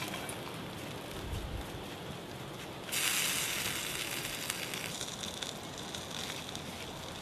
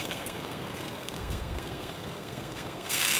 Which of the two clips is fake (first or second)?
second